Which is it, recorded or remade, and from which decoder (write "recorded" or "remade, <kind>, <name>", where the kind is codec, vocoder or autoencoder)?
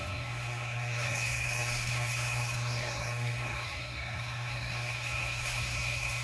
remade, codec, SNAC